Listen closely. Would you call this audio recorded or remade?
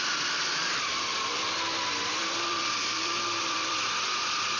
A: remade